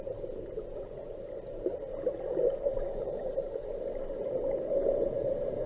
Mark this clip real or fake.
real